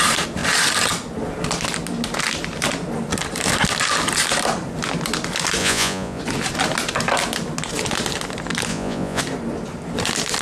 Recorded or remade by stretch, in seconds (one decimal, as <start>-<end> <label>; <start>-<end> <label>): 0.0-5.6 recorded; 5.6-6.2 remade; 6.2-8.7 recorded; 8.7-9.2 remade; 9.2-10.4 recorded